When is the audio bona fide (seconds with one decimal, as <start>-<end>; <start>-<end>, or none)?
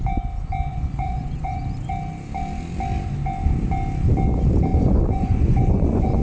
0.0-0.7; 1.6-4.7